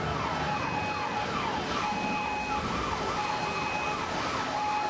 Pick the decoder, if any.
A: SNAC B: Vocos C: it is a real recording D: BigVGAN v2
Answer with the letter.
C